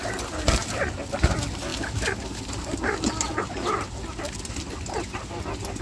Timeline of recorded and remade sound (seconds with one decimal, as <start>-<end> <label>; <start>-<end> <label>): 0.0-5.8 recorded